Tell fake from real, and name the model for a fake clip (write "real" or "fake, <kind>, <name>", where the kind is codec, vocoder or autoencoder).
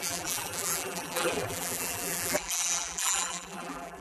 fake, vocoder, BigVGAN v2